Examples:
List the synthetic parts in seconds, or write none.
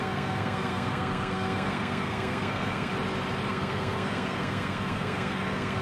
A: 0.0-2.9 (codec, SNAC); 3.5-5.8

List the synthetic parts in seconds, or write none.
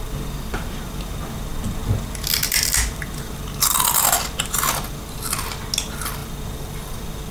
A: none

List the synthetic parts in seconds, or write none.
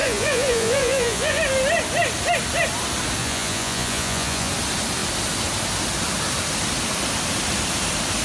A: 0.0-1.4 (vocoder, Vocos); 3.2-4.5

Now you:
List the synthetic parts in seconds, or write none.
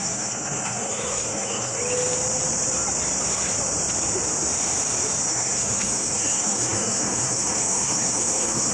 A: 0.0-1.8 (codec, SNAC); 5.3-8.7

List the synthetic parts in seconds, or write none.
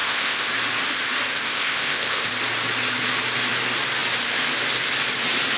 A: 0.0-0.5 (codec, ZipCodec); 1.3-2.3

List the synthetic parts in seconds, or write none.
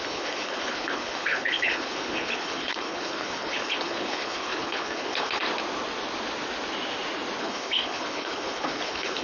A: 0.0-5.4 (codec, HILCodec); 7.4-9.2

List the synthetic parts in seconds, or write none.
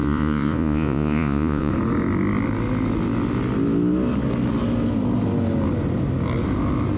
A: 0.0-1.7 (vocoder, Vocos)